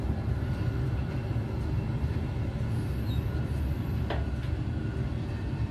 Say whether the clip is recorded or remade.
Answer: recorded